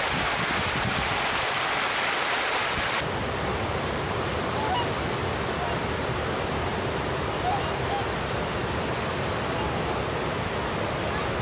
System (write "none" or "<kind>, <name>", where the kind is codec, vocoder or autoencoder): none